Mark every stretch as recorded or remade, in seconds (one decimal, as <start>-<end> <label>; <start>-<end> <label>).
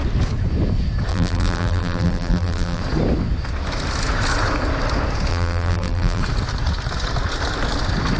0.0-1.1 recorded; 1.1-2.8 remade; 2.8-5.3 recorded; 5.3-6.2 remade; 6.2-8.2 recorded